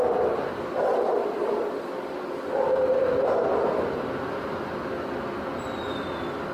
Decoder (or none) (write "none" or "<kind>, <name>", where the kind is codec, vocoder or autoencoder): none